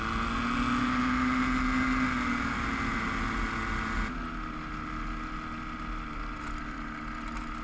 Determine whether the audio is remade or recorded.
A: recorded